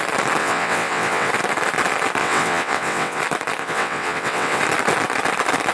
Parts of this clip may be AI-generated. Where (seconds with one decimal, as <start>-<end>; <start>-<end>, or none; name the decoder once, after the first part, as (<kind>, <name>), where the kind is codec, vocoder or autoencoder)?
0.4-1.3 (vocoder, WaveNeXt); 2.2-3.2; 3.6-4.6